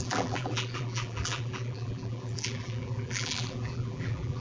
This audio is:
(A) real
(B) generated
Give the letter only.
B